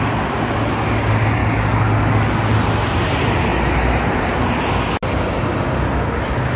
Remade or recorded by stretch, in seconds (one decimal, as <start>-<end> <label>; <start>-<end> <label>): 0.0-1.4 recorded; 1.4-2.4 remade; 2.4-6.6 recorded